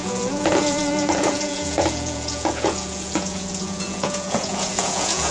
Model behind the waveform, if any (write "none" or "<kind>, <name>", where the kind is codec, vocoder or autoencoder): vocoder, Vocos